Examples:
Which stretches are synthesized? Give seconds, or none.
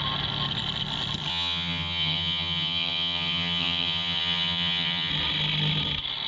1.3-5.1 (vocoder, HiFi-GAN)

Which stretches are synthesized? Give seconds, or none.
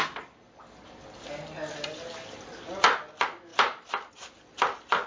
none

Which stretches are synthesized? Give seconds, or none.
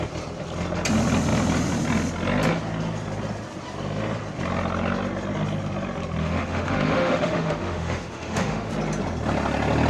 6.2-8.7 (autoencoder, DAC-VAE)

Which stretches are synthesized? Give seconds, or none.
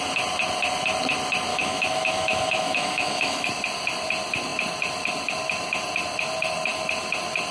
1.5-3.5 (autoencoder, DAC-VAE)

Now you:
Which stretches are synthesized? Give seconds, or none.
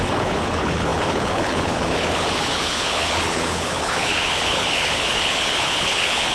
0.0-6.3 (codec, HILCodec)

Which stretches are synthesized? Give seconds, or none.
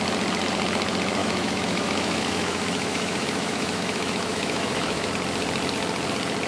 1.2-5.1 (autoencoder, DAC-VAE)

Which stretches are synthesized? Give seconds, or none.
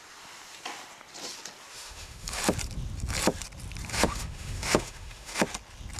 1.7-2.4 (autoencoder, DAC-VAE); 3.9-5.4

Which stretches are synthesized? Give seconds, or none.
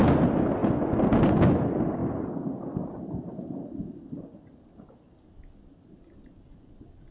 none